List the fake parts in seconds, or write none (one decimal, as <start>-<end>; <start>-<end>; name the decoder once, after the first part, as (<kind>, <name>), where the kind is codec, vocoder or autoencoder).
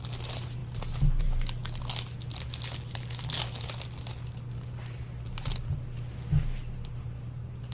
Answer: none